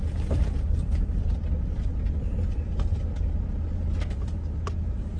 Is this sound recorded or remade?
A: recorded